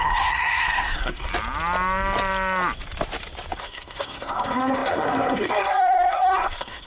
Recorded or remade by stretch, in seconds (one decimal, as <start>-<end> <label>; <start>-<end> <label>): 0.0-1.3 remade; 1.3-3.6 recorded; 3.6-6.9 remade